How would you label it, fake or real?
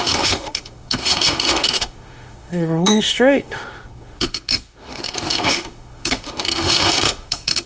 fake